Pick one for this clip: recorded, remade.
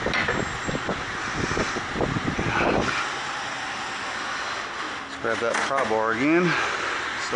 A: recorded